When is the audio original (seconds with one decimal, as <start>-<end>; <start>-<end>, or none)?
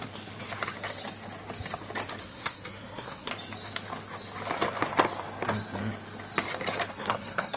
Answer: 0.0-2.2; 3.3-6.9